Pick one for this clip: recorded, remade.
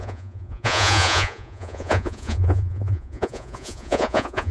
remade